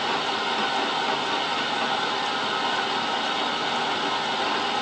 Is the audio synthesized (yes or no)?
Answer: no